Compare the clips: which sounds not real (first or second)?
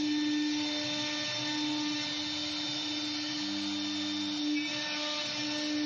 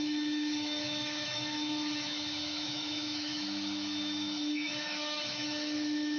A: second